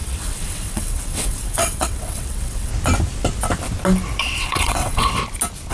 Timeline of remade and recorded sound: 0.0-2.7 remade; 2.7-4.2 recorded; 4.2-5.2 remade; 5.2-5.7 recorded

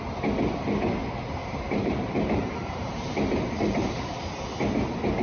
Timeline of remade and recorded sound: 0.0-1.4 recorded; 1.4-3.9 remade; 3.9-5.2 recorded

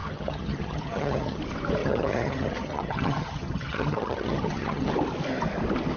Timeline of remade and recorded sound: 0.0-1.4 remade; 1.4-1.8 recorded; 1.8-4.9 remade; 4.9-6.0 recorded

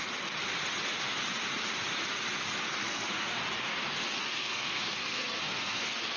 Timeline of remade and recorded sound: 0.0-2.8 recorded; 2.8-3.3 remade; 3.3-4.2 recorded; 4.2-6.2 remade

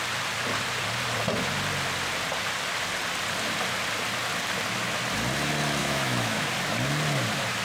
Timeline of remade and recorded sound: 0.0-5.8 recorded; 5.8-6.5 remade; 6.5-7.6 recorded

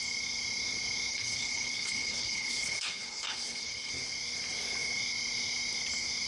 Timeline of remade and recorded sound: 0.0-1.1 recorded; 1.1-3.9 remade; 3.9-6.3 recorded

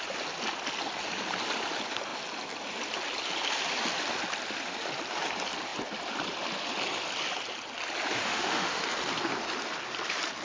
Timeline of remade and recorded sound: 0.0-8.2 recorded; 8.2-8.8 remade; 8.8-10.4 recorded